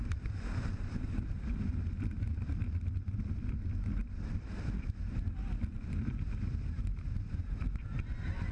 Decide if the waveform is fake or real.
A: real